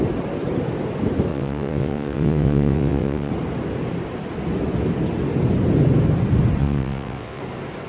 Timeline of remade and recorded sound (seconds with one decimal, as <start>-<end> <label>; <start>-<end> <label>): 0.0-1.3 recorded; 1.3-3.3 remade; 3.3-6.6 recorded; 6.6-7.4 remade; 7.4-7.9 recorded